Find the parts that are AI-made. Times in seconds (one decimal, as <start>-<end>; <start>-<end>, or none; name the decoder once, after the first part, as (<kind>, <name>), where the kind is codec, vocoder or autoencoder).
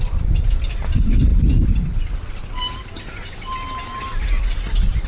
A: none